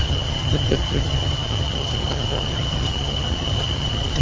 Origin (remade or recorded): remade